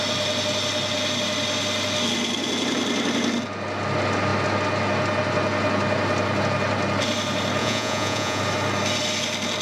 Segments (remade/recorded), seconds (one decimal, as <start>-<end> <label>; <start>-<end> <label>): 0.0-7.6 recorded; 7.6-8.4 remade; 8.4-9.6 recorded